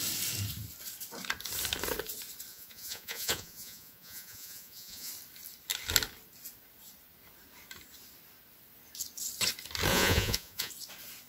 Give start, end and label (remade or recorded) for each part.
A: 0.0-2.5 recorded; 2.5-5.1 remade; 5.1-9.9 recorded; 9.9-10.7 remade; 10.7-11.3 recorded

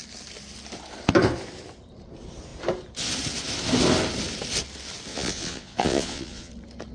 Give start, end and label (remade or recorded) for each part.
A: 0.0-5.1 recorded; 5.1-6.5 remade; 6.5-6.9 recorded

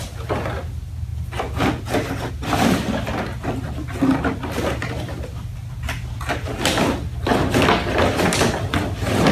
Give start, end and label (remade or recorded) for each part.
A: 0.0-9.3 recorded